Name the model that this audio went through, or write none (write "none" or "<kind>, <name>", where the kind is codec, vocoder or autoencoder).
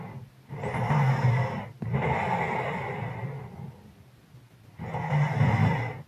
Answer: none